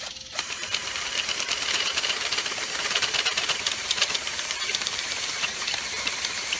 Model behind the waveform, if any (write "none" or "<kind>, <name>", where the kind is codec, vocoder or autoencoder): vocoder, BigVGAN v2